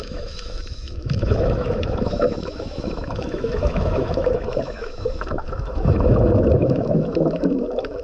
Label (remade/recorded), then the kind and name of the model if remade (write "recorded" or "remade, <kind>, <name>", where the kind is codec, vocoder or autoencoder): remade, autoencoder, DAC-VAE